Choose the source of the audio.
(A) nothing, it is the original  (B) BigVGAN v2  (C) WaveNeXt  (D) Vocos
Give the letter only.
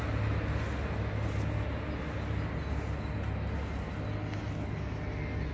A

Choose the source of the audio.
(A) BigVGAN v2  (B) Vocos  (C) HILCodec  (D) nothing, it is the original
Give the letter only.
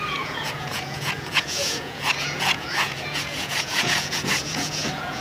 B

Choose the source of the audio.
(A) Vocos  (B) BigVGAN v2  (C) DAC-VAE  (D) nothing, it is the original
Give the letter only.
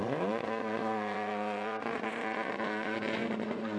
A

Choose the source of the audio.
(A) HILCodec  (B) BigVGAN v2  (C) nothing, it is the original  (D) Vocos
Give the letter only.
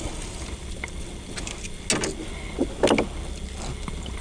C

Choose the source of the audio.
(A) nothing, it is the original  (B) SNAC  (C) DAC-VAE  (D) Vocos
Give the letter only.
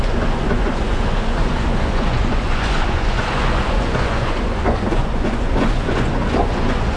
D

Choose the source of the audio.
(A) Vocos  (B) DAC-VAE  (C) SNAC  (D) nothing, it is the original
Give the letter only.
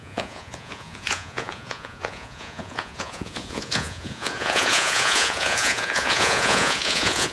A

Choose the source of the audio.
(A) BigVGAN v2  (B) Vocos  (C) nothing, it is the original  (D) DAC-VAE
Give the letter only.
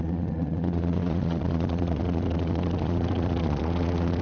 B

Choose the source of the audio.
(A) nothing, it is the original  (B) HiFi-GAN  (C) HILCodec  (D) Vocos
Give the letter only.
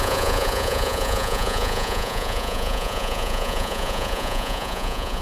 D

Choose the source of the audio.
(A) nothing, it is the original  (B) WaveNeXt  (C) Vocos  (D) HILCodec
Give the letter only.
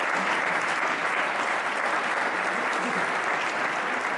A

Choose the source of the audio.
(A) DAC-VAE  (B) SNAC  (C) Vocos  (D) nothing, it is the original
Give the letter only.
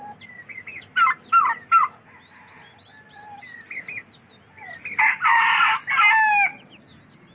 D